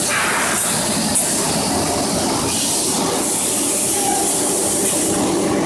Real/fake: real